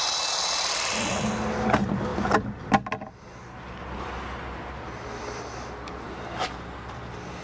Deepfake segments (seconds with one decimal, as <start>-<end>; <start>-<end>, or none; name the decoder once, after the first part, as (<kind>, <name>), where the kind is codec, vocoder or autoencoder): none